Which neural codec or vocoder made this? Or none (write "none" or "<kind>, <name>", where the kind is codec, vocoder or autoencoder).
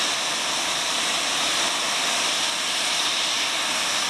none